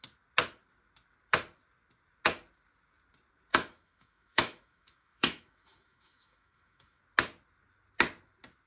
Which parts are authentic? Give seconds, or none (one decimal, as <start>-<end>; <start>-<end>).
0.0-3.5; 7.0-8.7